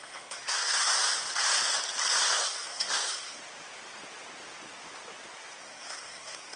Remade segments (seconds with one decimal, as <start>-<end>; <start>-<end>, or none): 0.0-0.9; 2.1-3.4; 5.6-6.6